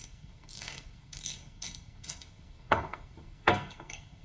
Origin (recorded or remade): remade